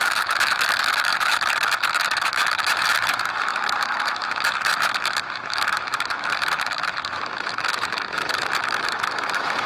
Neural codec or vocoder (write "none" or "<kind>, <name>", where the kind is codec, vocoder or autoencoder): autoencoder, DAC-VAE